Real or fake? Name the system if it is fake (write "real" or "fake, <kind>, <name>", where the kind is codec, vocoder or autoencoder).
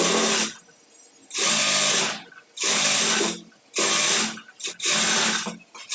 real